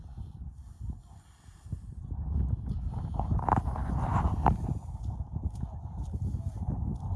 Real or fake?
real